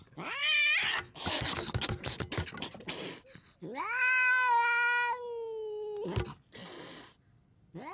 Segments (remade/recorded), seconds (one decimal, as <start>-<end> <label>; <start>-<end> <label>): 0.0-7.9 recorded